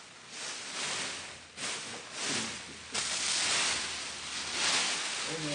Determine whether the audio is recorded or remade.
recorded